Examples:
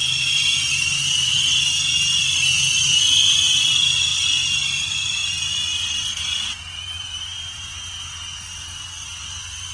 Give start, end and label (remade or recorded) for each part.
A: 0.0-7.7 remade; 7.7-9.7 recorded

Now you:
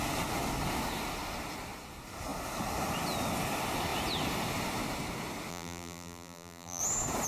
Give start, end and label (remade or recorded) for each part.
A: 0.0-5.5 recorded; 5.5-6.8 remade; 6.8-7.3 recorded

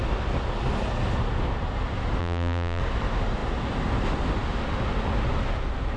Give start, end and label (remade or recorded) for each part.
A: 0.0-2.2 recorded; 2.2-2.8 remade; 2.8-6.0 recorded

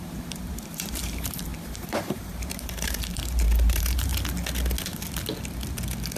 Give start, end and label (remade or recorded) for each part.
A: 0.0-4.1 remade; 4.1-6.2 recorded